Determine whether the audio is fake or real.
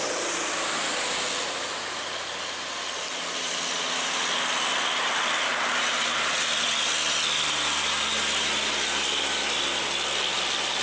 real